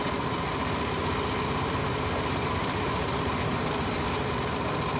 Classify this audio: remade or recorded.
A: recorded